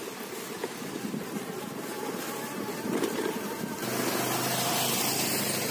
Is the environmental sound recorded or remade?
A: recorded